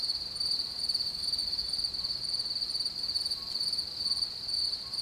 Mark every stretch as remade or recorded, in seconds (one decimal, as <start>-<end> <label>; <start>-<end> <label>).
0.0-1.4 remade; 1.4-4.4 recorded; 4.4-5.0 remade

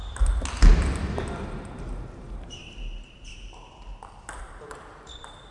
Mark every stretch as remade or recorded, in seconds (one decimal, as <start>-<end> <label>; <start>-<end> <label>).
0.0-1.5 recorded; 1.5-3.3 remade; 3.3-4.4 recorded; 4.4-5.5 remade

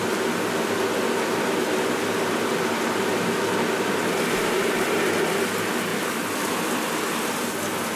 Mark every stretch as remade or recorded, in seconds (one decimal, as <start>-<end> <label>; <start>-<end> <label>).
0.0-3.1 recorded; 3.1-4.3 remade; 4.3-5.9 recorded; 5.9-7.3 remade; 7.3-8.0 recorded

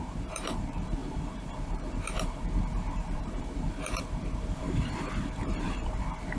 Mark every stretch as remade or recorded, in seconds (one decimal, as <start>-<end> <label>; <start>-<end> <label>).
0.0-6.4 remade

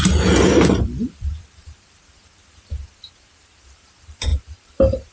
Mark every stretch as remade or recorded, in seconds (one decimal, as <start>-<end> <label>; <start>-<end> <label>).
0.0-5.1 remade

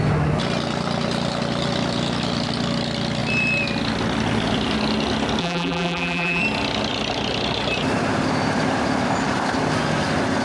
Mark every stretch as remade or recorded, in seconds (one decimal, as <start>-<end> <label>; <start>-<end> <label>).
0.0-5.4 recorded; 5.4-6.4 remade; 6.4-10.4 recorded